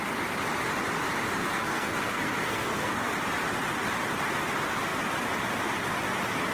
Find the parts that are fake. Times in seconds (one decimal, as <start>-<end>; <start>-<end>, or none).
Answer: 1.4-3.1